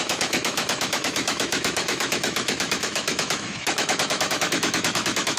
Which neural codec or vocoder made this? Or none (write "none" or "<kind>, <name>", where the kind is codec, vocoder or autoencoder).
autoencoder, DAC-VAE